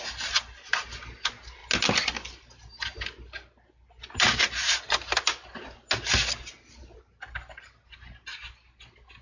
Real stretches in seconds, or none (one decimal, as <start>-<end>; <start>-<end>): 0.0-9.2